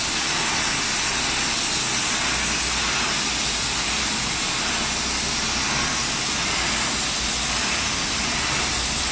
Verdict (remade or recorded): recorded